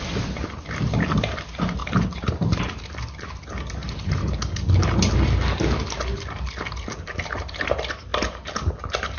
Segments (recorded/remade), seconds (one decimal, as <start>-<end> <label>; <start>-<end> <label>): 0.0-1.8 recorded; 1.8-2.6 remade; 2.6-9.2 recorded